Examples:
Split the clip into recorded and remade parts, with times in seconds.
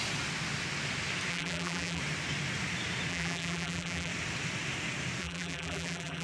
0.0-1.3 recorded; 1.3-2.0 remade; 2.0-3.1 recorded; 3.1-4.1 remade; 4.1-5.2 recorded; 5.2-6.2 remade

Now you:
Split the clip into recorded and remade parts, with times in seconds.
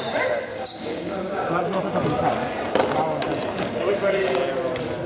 0.0-0.5 recorded; 0.5-1.8 remade; 1.8-3.5 recorded; 3.5-4.3 remade; 4.3-5.1 recorded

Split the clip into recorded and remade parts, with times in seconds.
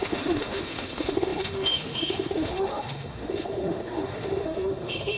0.0-5.2 remade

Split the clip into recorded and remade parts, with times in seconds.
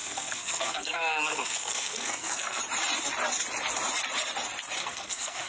0.0-2.6 remade; 2.6-4.8 recorded; 4.8-5.5 remade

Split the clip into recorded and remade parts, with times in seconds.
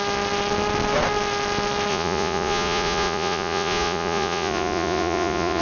0.0-1.9 recorded; 1.9-5.6 remade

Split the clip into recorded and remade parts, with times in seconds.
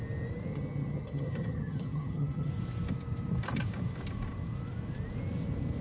0.0-0.5 recorded; 0.5-2.5 remade; 2.5-5.8 recorded